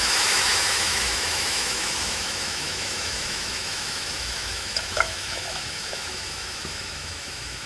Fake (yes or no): yes